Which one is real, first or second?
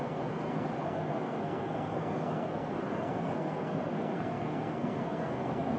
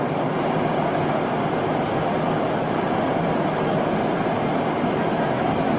second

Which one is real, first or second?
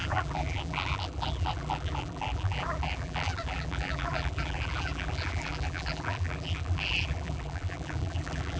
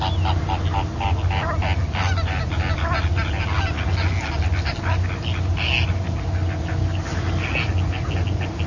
second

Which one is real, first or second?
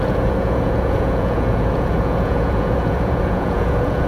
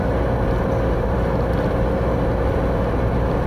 second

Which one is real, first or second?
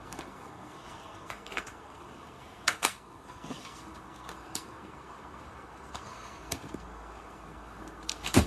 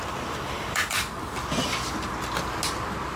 second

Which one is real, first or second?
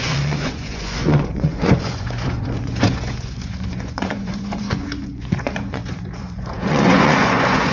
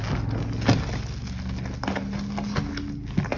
second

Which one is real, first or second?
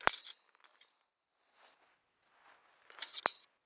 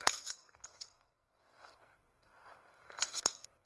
first